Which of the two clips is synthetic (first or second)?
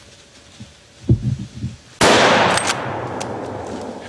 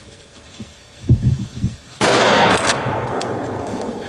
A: second